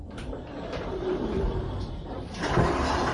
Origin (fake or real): fake